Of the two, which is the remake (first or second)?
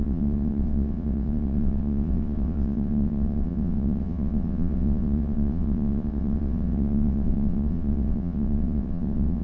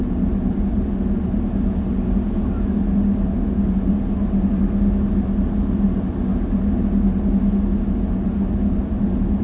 first